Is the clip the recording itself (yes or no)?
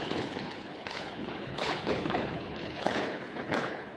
no